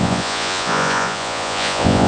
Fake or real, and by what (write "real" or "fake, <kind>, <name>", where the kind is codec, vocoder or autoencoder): fake, vocoder, Vocos